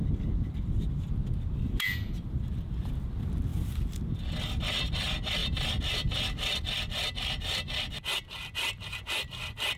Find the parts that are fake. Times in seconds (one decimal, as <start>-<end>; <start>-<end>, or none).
none